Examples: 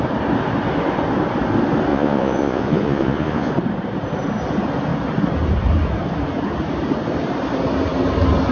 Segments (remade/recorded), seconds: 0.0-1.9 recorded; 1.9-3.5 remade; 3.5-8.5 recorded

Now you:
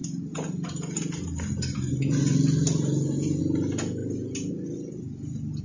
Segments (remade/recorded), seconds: 0.0-5.6 recorded

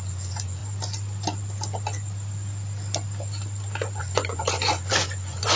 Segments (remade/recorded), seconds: 0.0-0.6 remade; 0.6-4.0 recorded; 4.0-5.6 remade

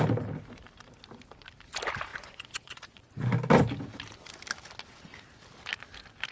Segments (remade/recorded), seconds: 0.0-2.1 recorded; 2.1-3.1 remade; 3.1-6.3 recorded